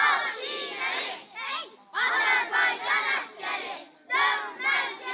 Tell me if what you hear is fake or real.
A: real